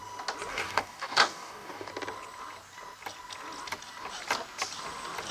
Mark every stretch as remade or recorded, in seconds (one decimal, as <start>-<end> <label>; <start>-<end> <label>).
0.0-0.5 recorded; 0.5-1.9 remade; 1.9-5.3 recorded